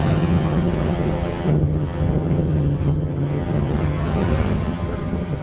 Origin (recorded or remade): remade